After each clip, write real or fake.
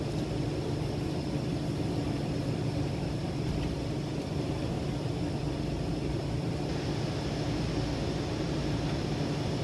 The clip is real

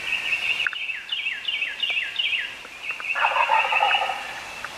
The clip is real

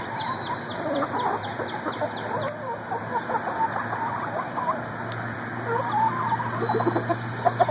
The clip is real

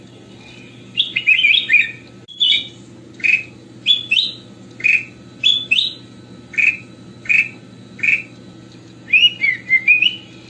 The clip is real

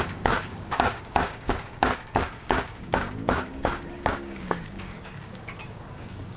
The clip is fake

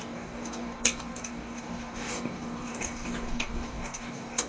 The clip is fake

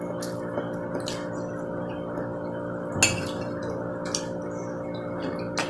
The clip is real